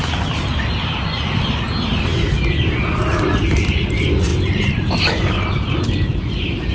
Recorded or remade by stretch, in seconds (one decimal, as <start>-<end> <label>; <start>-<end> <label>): 0.0-6.7 recorded